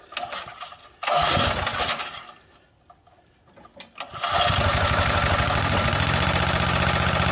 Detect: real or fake real